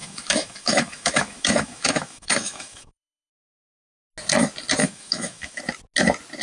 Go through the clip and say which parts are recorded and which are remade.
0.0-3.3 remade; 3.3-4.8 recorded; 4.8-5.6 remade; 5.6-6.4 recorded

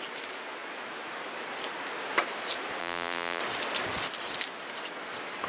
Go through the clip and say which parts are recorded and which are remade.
0.0-2.8 recorded; 2.8-3.4 remade; 3.4-5.5 recorded

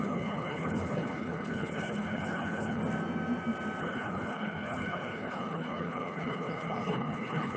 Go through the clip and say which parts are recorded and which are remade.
0.0-2.8 remade; 2.8-3.8 recorded; 3.8-7.6 remade